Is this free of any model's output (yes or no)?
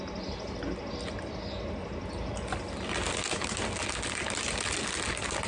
yes